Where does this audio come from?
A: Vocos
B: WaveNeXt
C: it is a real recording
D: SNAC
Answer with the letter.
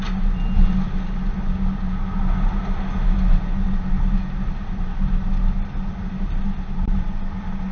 C